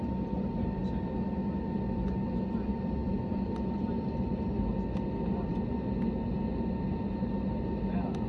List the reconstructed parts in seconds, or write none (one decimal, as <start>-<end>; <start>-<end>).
none